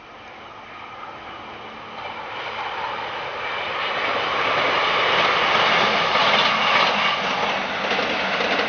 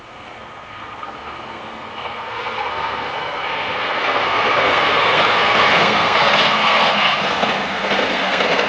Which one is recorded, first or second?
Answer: first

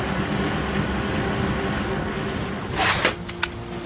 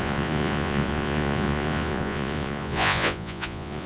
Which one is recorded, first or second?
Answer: first